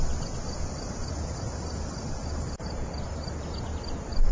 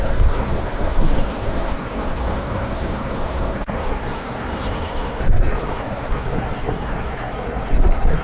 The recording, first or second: first